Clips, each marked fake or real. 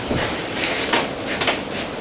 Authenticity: real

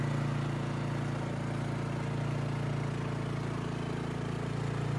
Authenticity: real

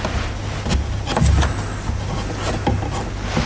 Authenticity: real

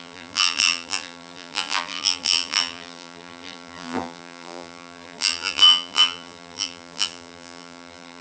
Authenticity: fake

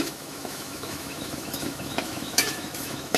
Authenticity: fake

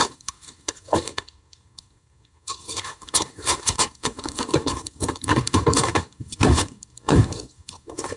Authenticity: fake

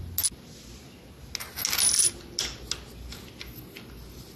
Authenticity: real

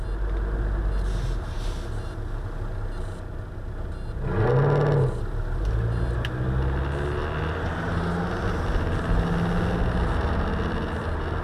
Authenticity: real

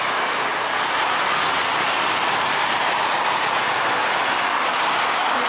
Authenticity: real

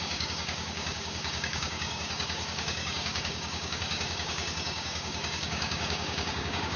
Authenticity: fake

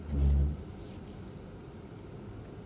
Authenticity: real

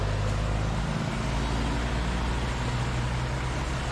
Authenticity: real